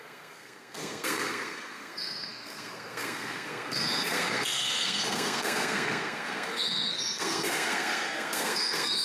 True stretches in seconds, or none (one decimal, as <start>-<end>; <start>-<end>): none